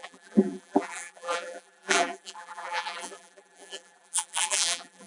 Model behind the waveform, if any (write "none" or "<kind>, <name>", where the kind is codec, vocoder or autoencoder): vocoder, BigVGAN v2